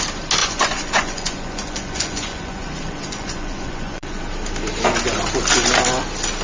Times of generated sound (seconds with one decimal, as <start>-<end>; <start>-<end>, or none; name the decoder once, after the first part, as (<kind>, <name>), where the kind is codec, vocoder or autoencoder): 0.4-4.2 (vocoder, Vocos)